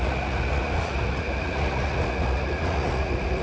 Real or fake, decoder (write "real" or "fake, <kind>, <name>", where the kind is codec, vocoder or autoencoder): fake, vocoder, Vocos